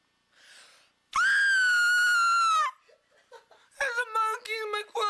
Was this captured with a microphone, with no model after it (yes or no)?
yes